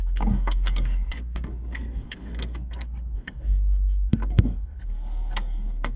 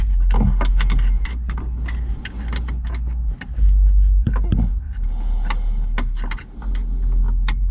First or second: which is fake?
first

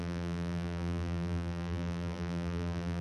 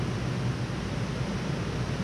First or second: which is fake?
first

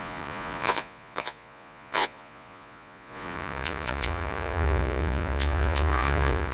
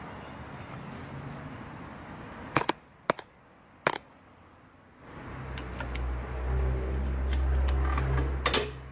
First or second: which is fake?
first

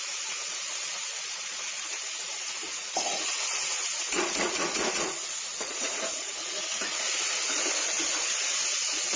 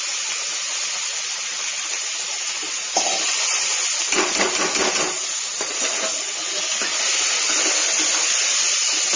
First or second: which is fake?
first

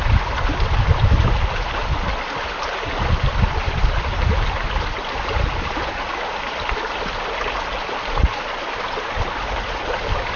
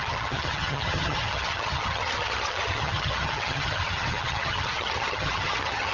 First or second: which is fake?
second